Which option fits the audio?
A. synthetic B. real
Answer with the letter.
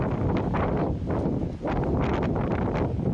B